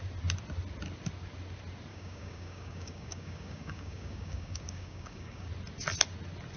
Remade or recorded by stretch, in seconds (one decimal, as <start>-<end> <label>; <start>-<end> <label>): 0.0-1.9 recorded; 1.9-5.5 remade; 5.5-6.6 recorded

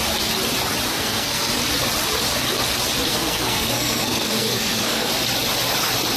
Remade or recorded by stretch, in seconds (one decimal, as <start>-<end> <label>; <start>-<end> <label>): 0.0-0.9 recorded; 0.9-1.5 remade; 1.5-3.1 recorded; 3.1-5.1 remade; 5.1-6.2 recorded